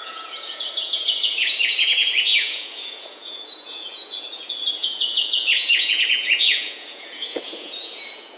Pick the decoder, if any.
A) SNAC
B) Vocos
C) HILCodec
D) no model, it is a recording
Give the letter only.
B